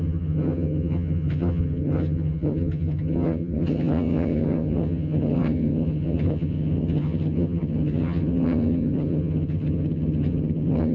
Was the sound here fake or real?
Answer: fake